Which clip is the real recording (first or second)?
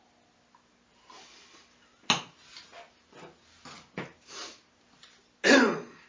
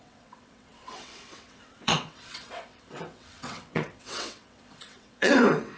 first